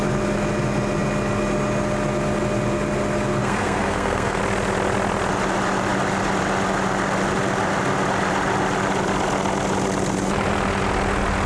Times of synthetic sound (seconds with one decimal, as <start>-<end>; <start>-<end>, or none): 3.4-4.4